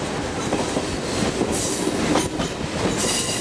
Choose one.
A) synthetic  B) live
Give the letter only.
B